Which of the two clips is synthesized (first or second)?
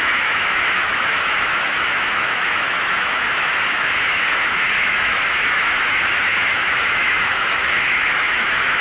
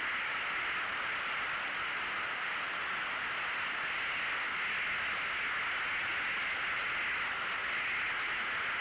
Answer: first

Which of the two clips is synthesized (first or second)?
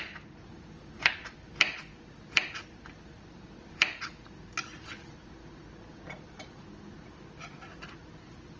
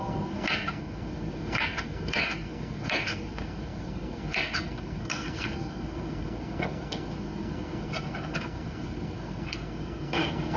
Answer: second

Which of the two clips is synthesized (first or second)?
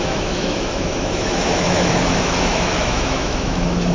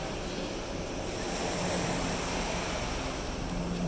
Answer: first